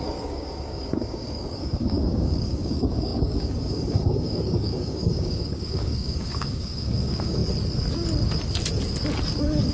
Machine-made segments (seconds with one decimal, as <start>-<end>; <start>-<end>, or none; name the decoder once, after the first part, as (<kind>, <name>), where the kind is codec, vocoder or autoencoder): 0.0-7.4 (codec, DAC)